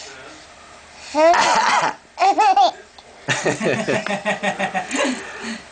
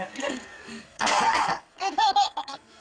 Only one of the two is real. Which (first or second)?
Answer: first